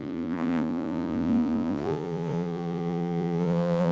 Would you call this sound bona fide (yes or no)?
no